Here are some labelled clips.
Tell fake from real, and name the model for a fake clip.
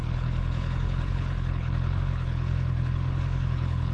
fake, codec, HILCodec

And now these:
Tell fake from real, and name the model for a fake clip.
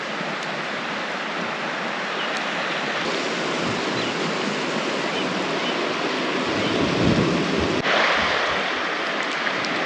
real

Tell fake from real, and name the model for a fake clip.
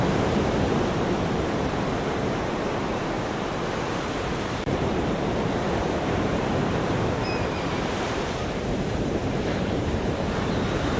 fake, vocoder, BigVGAN v2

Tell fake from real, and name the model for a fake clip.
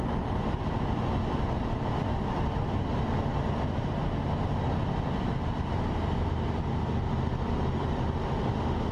real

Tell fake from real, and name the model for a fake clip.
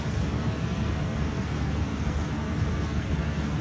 fake, codec, SNAC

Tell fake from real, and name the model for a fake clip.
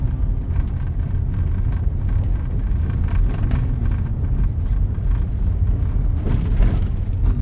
real